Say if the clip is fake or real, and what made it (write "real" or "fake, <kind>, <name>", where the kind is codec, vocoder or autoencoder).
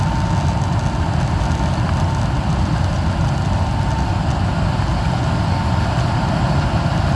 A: real